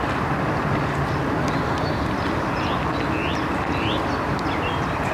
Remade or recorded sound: recorded